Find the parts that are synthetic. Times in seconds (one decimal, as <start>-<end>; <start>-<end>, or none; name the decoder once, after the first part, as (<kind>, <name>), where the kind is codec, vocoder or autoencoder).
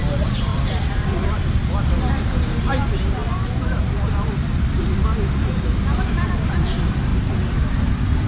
0.5-1.7 (vocoder, BigVGAN v2); 7.1-8.3